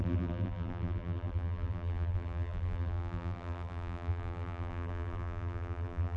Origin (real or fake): fake